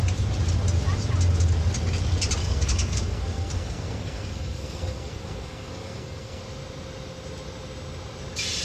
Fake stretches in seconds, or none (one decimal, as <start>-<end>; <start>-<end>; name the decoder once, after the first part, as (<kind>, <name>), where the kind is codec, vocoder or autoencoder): 2.4-6.4 (codec, SNAC)